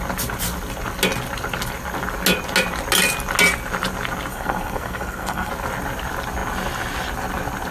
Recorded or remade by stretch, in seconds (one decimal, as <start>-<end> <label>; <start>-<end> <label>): 0.0-4.3 recorded; 4.3-5.5 remade; 5.5-7.7 recorded